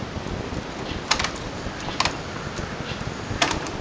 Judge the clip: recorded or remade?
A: recorded